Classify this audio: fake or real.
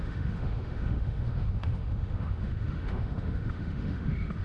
fake